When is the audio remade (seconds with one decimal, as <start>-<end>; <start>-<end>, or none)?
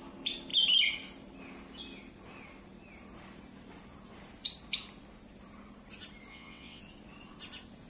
6.3-6.8